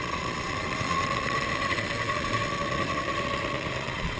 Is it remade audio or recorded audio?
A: remade